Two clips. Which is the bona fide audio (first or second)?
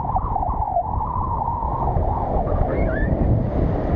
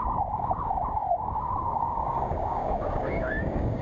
first